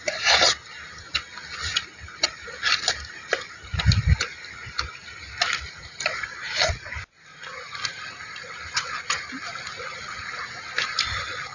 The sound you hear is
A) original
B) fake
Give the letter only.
A